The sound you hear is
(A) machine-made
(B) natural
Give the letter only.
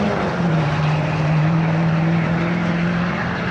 A